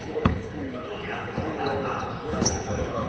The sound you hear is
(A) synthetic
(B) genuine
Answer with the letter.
A